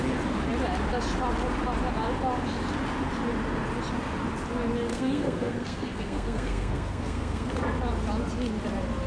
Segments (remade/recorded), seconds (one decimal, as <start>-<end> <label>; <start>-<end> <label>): 0.0-4.9 recorded; 4.9-7.5 remade; 7.5-9.1 recorded